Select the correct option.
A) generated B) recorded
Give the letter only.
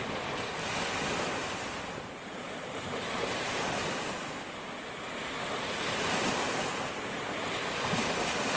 B